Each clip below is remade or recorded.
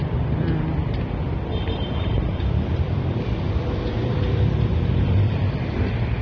remade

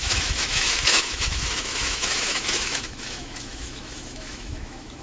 remade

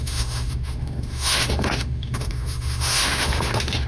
remade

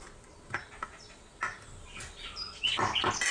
recorded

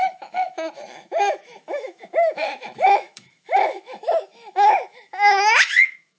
remade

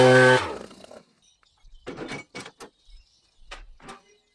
recorded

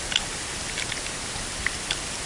recorded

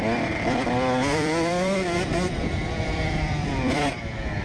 remade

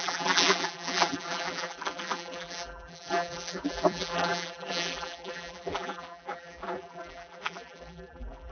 remade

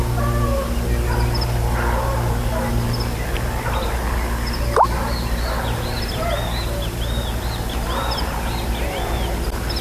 recorded